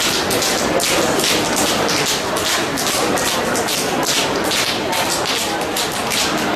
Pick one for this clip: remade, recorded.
recorded